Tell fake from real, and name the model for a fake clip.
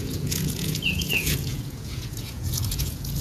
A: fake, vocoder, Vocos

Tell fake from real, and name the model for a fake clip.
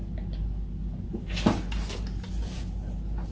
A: real